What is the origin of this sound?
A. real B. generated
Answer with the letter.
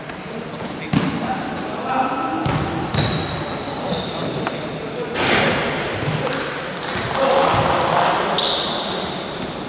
A